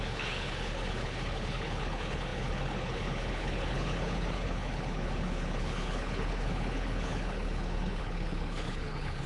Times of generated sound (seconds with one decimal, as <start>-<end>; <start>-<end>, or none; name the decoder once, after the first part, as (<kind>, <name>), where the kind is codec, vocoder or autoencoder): 0.0-9.3 (codec, HILCodec)